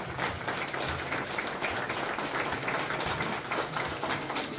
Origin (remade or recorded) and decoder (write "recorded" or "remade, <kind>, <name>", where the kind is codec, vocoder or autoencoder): recorded